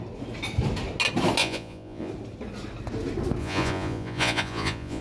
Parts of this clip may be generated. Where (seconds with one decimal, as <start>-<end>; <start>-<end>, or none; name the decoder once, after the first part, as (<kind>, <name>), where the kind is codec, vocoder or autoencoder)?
1.4-2.1 (vocoder, Vocos); 3.4-5.0